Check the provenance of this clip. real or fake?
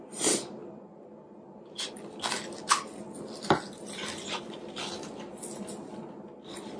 real